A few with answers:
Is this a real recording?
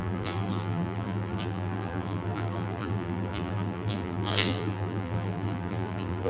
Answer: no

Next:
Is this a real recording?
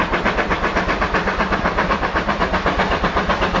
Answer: yes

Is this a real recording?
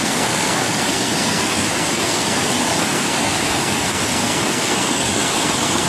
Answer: no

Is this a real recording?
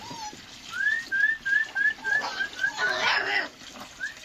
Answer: yes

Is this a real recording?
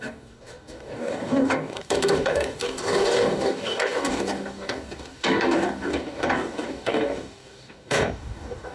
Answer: no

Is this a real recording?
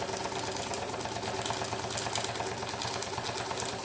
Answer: yes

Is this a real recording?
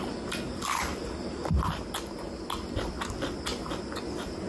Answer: yes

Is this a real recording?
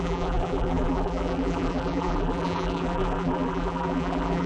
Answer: no